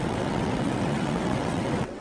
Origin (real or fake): fake